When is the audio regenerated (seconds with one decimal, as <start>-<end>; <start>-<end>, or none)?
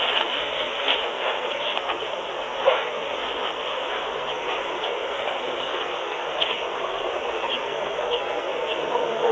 0.0-9.3